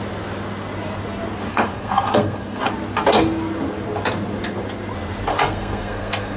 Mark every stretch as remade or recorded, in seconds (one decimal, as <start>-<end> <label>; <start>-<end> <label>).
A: 0.0-1.5 recorded; 1.5-2.6 remade; 2.6-5.3 recorded; 5.3-6.4 remade